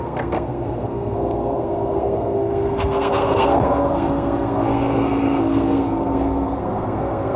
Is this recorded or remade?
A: remade